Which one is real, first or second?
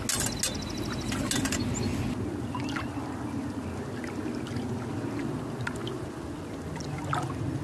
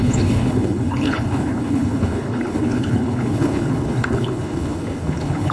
first